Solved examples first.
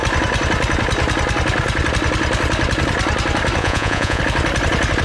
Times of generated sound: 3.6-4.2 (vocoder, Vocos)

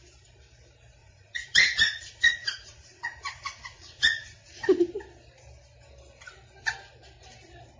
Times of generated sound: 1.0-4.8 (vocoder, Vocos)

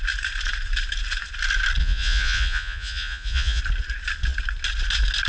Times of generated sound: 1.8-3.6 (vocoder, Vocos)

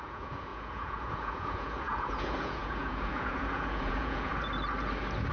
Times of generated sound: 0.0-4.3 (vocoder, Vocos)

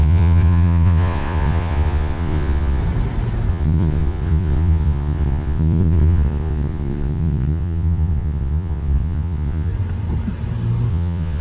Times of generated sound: 0.0-2.8 (vocoder, Vocos); 3.5-9.7; 10.9-11.4

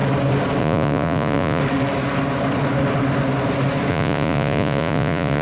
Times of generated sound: 0.6-1.6 (vocoder, Vocos); 3.9-5.4